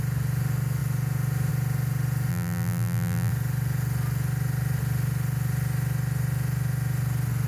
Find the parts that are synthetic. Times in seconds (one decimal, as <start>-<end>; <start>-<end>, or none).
2.3-3.3